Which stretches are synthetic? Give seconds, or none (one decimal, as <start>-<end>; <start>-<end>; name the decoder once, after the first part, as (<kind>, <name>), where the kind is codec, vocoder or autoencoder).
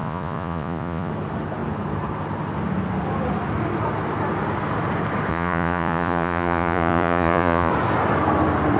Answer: 0.0-1.1 (vocoder, Vocos); 5.3-7.7